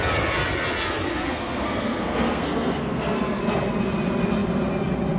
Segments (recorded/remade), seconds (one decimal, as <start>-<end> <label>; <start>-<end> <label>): 0.0-1.1 recorded; 1.1-3.4 remade; 3.4-5.2 recorded